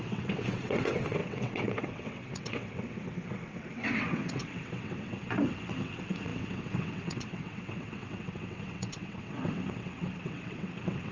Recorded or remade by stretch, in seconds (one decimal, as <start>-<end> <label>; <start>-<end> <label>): 0.0-11.1 remade